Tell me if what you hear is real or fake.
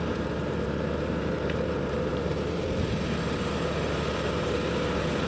fake